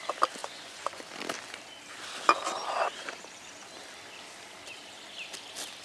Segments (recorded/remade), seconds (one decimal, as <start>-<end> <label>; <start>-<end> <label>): 0.0-0.4 recorded; 0.4-1.0 remade; 1.0-5.8 recorded